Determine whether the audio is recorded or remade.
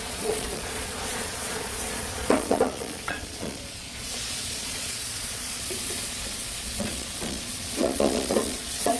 remade